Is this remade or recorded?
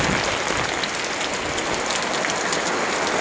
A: recorded